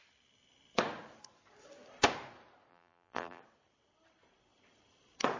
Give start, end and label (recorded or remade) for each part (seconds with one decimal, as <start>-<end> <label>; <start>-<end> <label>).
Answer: 0.0-2.7 recorded; 2.7-3.4 remade; 3.4-5.4 recorded